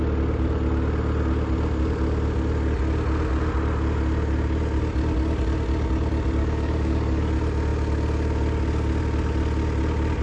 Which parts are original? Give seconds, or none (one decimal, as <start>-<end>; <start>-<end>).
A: 0.0-6.4; 7.3-10.2